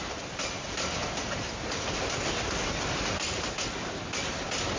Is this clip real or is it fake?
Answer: real